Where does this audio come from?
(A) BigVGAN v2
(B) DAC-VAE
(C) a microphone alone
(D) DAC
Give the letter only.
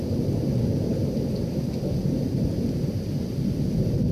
C